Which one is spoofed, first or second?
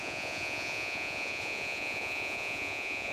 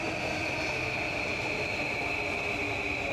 first